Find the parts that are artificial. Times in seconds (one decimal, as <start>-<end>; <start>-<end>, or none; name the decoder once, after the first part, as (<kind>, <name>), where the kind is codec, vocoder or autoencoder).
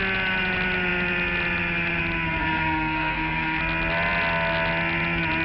2.4-3.6 (codec, SNAC)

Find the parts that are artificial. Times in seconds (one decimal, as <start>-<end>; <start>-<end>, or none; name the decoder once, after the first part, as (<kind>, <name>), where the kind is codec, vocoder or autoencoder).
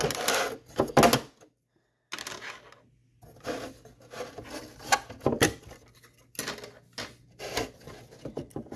none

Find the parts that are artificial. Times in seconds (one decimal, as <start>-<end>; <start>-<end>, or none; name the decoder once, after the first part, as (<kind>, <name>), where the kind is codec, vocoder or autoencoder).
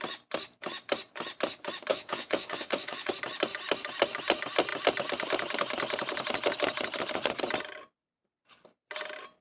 1.9-3.1 (vocoder, WaveNeXt)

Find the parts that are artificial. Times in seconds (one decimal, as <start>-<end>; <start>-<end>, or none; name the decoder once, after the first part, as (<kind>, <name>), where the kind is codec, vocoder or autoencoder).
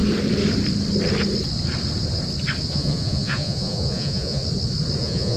2.7-4.4 (vocoder, Vocos); 5.0-5.4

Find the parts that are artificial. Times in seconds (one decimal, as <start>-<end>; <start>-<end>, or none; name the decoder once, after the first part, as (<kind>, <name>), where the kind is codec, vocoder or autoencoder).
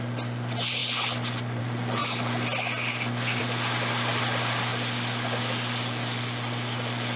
none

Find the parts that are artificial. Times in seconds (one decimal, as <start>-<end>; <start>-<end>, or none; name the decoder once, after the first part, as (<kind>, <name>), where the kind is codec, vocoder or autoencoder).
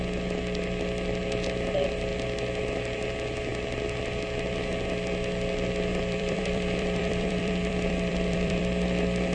5.9-8.6 (vocoder, BigVGAN v2)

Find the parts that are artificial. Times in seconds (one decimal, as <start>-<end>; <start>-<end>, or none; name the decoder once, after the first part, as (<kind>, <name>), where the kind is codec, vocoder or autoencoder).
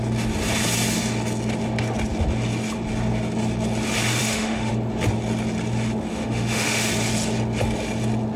4.2-4.7 (autoencoder, DAC-VAE); 6.1-6.9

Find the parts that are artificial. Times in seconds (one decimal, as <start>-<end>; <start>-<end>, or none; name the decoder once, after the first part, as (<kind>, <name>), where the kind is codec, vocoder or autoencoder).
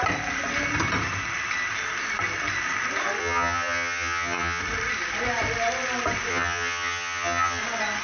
3.2-4.6 (vocoder, HiFi-GAN); 6.3-7.6